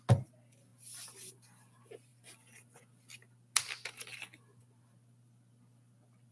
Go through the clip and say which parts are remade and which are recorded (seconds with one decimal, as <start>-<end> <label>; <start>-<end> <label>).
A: 0.0-6.3 recorded